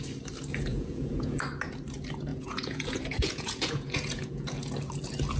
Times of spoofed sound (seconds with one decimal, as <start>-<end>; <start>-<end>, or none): 0.5-1.4; 2.3-4.7